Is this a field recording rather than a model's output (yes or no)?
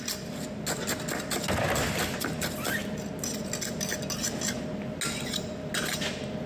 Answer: yes